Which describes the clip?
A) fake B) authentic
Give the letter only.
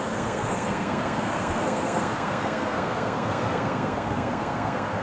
A